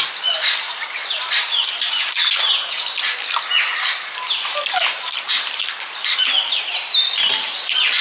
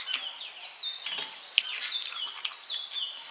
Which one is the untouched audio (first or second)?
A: second